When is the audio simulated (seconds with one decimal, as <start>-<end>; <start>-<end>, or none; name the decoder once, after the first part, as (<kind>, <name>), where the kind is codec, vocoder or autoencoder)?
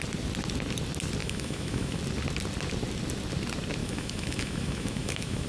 1.2-2.0 (autoencoder, DAC-VAE); 3.8-5.5